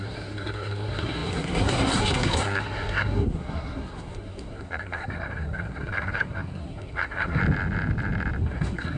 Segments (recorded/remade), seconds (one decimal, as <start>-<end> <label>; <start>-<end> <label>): 0.0-7.4 remade; 7.4-8.4 recorded; 8.4-9.0 remade